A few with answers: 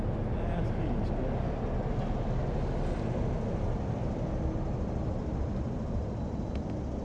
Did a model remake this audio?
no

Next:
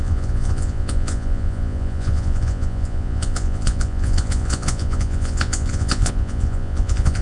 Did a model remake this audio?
yes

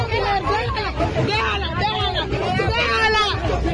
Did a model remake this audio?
no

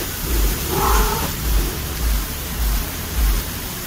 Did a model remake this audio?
yes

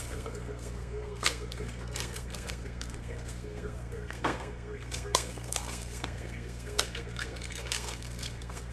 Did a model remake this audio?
yes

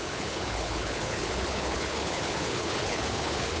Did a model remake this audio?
yes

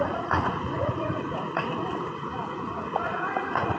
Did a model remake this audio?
yes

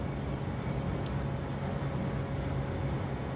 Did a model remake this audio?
no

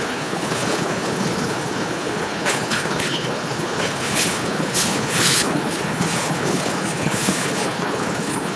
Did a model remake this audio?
yes